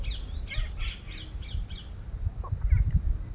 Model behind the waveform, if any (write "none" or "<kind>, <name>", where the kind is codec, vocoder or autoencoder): none